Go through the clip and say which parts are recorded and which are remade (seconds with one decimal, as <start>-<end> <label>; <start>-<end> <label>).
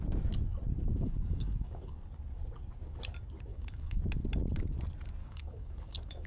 0.0-0.9 recorded; 0.9-2.0 remade; 2.0-3.5 recorded; 3.5-4.0 remade; 4.0-5.2 recorded; 5.2-6.3 remade